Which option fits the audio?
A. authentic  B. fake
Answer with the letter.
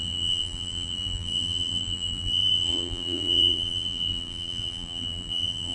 B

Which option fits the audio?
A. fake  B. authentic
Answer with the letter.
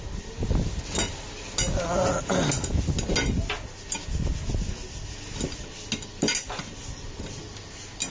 B